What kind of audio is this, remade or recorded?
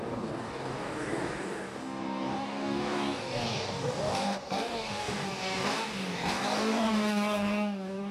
remade